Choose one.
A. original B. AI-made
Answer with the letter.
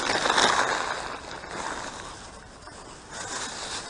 A